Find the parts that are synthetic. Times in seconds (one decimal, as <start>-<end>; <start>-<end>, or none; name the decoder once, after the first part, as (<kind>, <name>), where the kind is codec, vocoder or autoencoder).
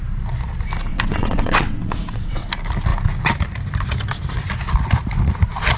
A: 0.9-2.5 (vocoder, WaveNeXt)